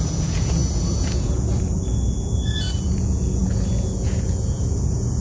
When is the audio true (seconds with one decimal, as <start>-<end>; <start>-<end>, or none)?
none